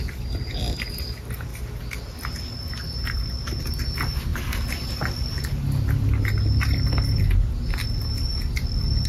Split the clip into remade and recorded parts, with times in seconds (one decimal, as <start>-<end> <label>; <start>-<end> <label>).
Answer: 0.0-9.1 recorded